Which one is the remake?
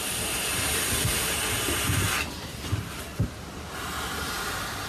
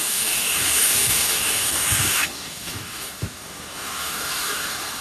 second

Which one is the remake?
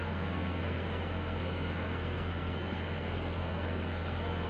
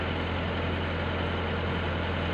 first